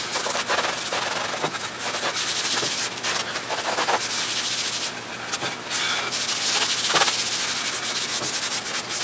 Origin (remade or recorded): recorded